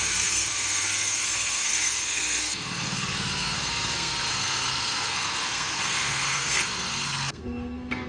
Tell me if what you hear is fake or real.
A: fake